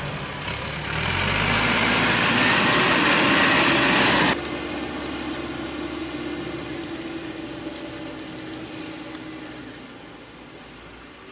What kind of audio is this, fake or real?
real